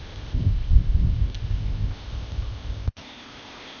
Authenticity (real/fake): fake